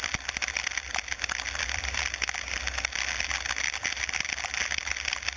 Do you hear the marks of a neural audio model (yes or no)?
no